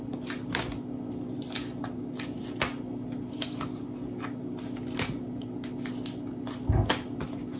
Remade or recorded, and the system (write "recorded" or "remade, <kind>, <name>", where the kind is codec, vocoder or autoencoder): recorded